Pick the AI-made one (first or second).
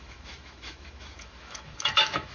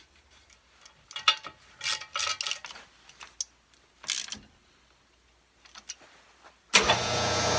first